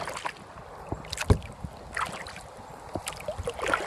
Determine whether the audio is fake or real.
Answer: real